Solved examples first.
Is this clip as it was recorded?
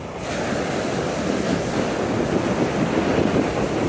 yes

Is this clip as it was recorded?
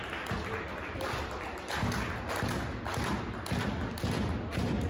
yes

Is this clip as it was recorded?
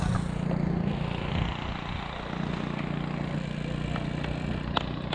yes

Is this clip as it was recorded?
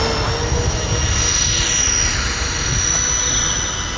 yes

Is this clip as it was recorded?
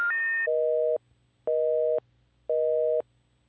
yes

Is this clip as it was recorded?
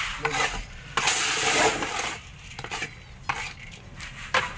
yes